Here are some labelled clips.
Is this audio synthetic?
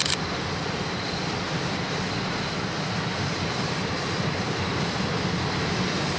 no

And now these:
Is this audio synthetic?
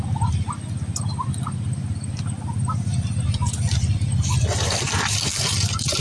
no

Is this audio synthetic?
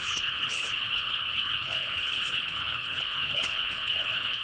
yes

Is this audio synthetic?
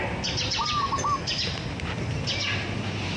no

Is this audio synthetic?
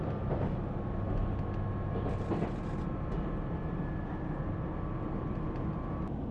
no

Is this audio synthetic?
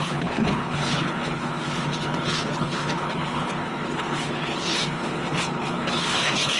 yes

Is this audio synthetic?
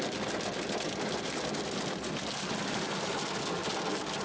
no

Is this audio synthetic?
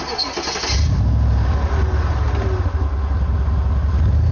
no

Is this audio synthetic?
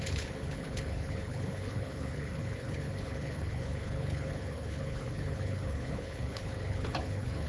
yes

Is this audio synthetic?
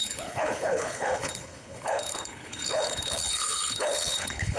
yes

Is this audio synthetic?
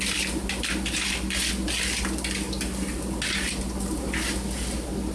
no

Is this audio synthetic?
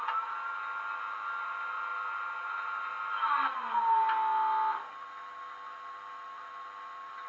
no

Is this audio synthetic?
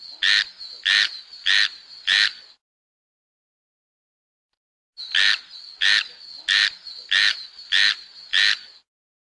no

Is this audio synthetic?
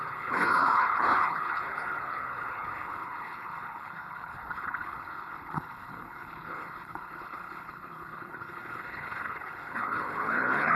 yes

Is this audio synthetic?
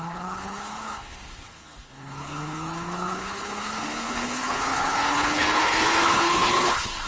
yes